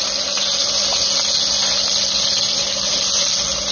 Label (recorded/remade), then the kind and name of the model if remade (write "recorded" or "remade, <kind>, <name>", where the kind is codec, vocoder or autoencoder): recorded